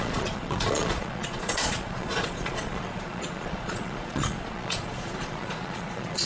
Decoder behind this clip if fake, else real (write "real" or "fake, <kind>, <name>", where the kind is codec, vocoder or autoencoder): fake, vocoder, Vocos